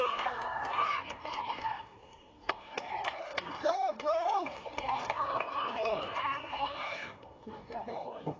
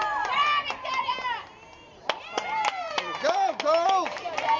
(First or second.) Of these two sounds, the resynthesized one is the first